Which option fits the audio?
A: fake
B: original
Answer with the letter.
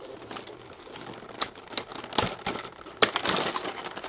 B